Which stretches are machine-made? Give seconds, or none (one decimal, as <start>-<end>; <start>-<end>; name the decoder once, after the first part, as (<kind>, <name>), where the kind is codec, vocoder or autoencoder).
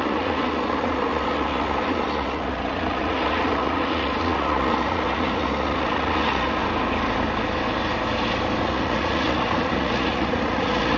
0.0-6.6 (vocoder, Vocos); 8.6-11.0